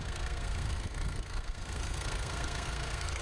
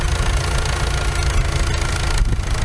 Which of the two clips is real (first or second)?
second